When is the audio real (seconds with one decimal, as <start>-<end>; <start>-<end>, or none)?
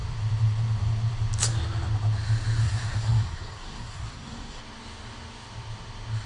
0.0-2.6; 4.6-6.3